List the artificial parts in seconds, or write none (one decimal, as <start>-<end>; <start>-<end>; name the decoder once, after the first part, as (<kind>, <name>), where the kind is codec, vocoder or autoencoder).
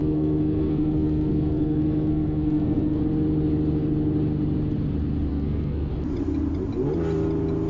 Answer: 0.0-3.0 (codec, SNAC); 5.3-5.9